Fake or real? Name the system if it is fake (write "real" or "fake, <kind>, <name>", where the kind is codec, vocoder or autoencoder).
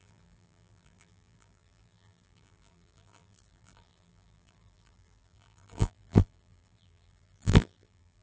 fake, vocoder, BigVGAN v2